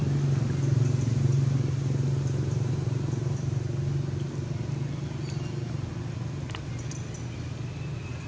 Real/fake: real